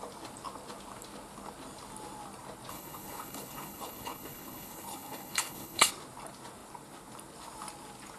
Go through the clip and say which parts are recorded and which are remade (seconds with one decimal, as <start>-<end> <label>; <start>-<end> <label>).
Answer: 0.0-2.7 recorded; 2.7-5.9 remade; 5.9-8.2 recorded